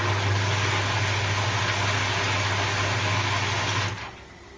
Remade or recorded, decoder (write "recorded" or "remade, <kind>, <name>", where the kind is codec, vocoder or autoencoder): recorded